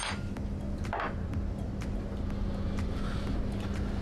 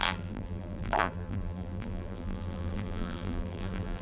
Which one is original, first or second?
first